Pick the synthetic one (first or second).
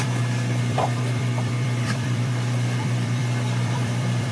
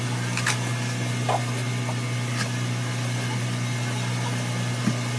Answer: first